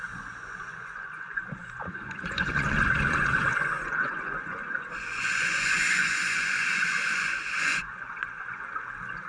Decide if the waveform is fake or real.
fake